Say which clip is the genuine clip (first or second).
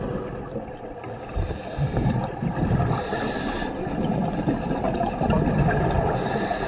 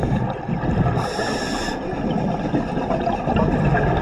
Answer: second